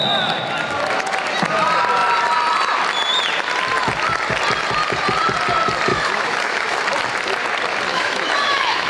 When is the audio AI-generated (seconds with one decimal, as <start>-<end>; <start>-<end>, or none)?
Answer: 5.9-6.8; 7.9-8.9